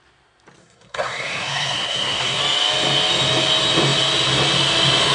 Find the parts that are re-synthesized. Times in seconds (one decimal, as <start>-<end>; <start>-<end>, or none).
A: 0.6-2.4